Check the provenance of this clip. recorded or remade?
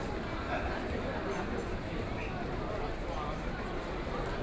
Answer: recorded